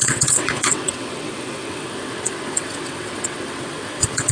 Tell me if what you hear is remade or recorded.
remade